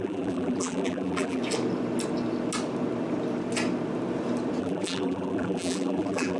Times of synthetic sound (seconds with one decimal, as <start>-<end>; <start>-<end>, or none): 0.0-1.4; 4.6-6.4